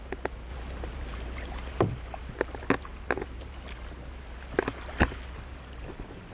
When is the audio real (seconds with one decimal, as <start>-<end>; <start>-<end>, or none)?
0.0-6.3